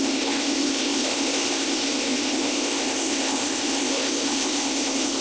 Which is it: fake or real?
fake